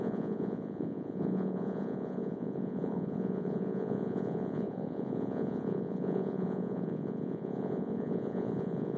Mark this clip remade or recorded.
remade